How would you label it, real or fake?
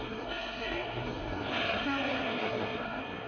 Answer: fake